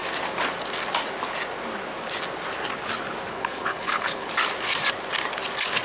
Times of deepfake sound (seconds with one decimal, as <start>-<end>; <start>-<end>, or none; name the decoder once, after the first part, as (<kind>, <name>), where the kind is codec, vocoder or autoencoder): 3.3-4.3 (codec, HILCodec)